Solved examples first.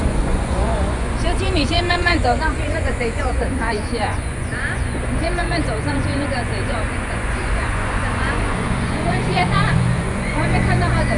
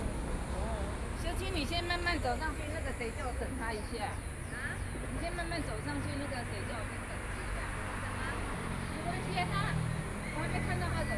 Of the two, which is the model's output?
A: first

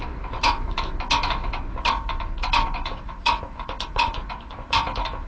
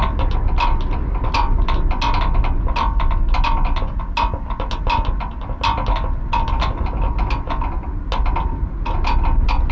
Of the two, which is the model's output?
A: first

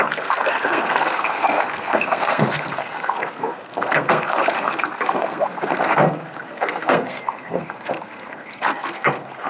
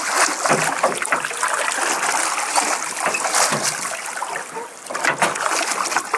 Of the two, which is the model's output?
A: first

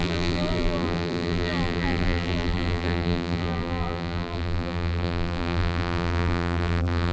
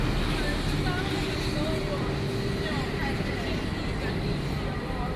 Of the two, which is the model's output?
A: first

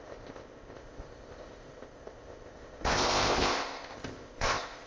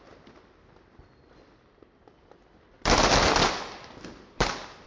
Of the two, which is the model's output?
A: first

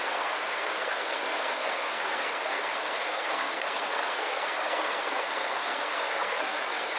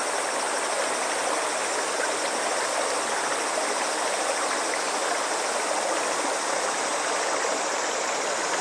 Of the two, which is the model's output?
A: first